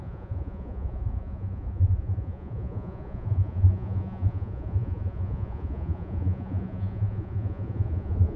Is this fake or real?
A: fake